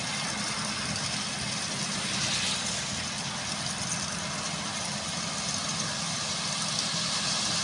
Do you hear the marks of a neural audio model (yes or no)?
no